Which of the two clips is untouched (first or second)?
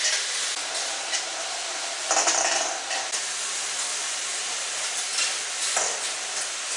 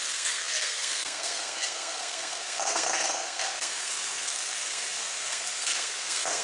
first